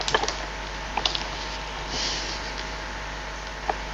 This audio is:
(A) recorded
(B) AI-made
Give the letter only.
A